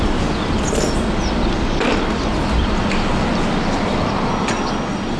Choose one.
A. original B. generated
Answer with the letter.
A